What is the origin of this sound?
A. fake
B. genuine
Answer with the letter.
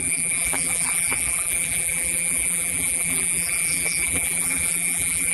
A